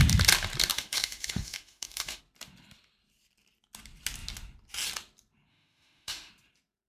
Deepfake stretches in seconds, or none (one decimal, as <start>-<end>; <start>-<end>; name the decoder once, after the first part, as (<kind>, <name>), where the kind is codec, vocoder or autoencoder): 0.7-2.2 (autoencoder, DAC-VAE); 5.5-6.3